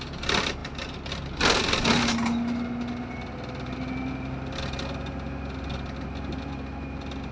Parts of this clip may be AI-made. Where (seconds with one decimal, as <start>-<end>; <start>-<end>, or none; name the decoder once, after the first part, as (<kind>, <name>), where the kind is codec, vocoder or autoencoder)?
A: none